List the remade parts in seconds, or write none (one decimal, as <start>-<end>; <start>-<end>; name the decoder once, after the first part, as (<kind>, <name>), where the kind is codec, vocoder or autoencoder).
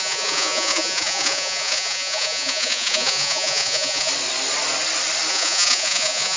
0.0-4.1 (vocoder, Vocos); 5.3-6.4